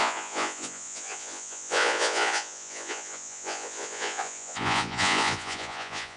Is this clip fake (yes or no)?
yes